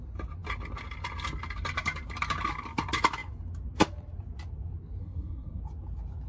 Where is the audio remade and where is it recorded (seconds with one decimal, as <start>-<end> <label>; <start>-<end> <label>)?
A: 0.0-5.0 recorded; 5.0-5.6 remade; 5.6-6.3 recorded